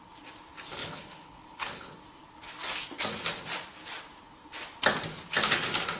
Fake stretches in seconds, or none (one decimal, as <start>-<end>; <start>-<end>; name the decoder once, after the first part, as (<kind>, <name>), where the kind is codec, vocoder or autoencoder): 0.8-1.9 (codec, HILCodec)